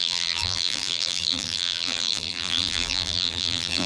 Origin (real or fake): fake